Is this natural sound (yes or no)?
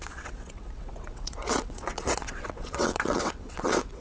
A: no